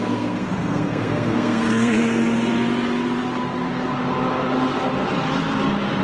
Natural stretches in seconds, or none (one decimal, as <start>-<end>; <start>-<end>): 2.2-6.0